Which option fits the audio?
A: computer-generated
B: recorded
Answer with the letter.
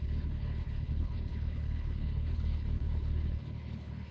A